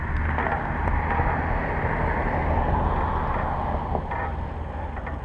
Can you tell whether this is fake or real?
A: real